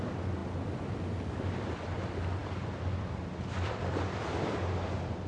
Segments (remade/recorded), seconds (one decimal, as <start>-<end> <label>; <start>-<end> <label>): 0.0-0.4 remade; 0.4-1.5 recorded; 1.5-5.3 remade